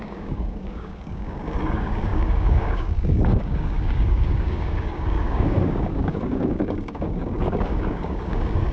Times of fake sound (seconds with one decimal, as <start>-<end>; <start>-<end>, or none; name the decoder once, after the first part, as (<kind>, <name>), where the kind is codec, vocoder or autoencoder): 0.0-8.7 (codec, DAC)